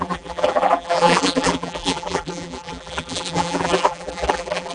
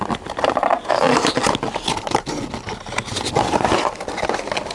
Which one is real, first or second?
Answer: second